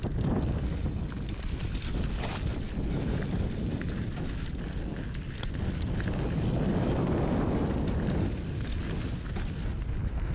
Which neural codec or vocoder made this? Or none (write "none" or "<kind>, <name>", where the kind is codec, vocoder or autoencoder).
none